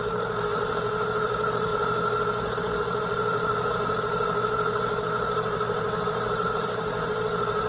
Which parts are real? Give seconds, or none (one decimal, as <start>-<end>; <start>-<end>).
1.7-2.6